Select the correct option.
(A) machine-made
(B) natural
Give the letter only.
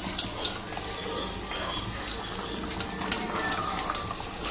B